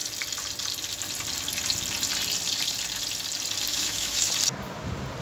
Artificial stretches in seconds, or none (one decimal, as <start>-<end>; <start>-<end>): 3.7-4.3